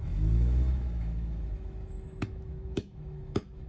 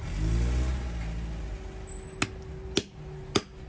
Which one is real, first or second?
second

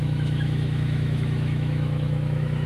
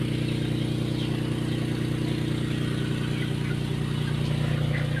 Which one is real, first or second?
second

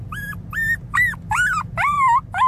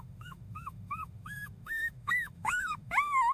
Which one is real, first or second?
first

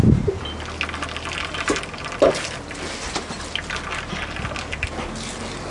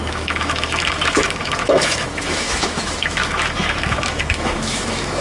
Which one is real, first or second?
first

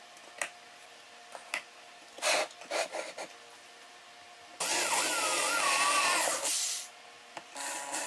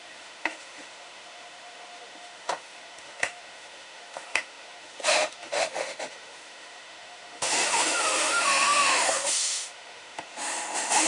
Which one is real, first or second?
first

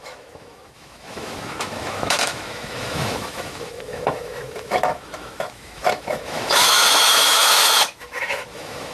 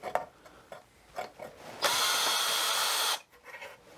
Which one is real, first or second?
second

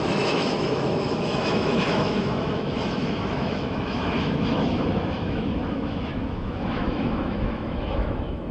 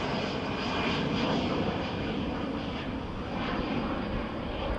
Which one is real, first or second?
second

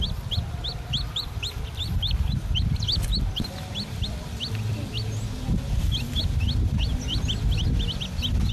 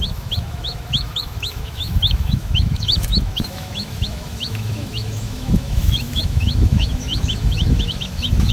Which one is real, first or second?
first